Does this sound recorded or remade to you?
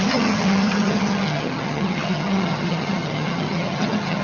remade